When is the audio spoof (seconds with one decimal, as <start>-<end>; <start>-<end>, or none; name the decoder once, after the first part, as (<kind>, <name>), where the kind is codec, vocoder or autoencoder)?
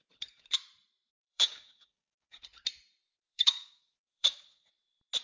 1.1-2.4 (codec, DAC); 3.2-4.7